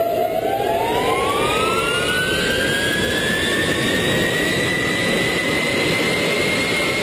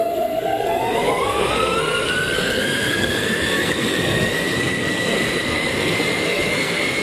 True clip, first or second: first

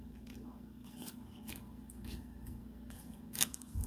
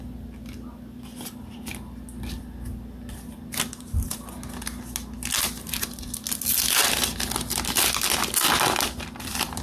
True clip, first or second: second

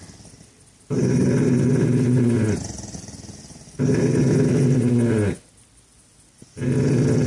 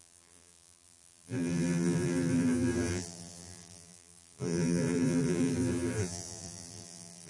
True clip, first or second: first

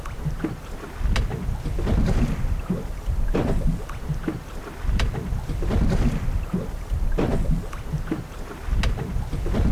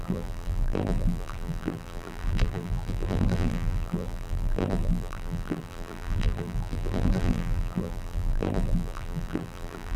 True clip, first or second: first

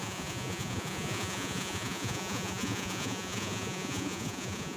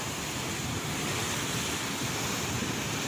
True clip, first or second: second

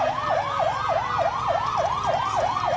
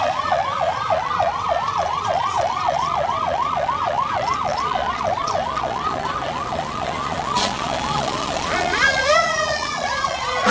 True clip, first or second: first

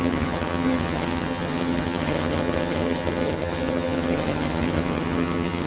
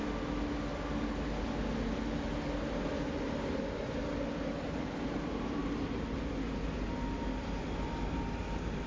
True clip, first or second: second